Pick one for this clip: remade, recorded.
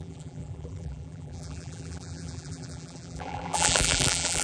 remade